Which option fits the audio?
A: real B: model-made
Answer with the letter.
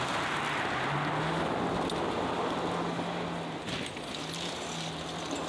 A